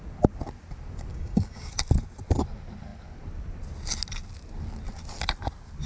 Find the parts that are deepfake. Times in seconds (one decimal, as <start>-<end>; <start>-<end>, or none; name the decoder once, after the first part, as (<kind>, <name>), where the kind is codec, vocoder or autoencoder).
1.1-1.7 (codec, DAC)